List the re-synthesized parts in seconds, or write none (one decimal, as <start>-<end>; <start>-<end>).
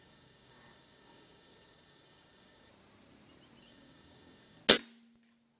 0.0-2.7; 3.6-4.6